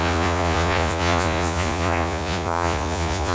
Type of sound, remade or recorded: remade